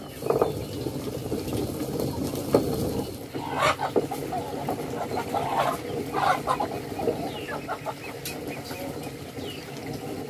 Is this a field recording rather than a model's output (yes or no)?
yes